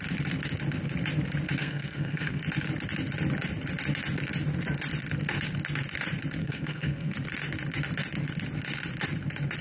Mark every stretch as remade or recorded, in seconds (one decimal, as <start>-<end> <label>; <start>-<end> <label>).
0.0-1.6 recorded; 1.6-2.4 remade; 2.4-6.4 recorded; 6.4-7.1 remade; 7.1-9.6 recorded